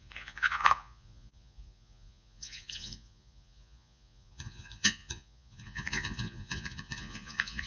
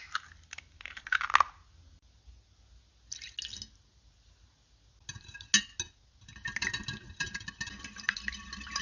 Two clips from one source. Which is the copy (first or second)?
first